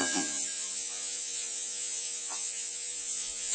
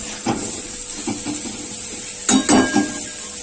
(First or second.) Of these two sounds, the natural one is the second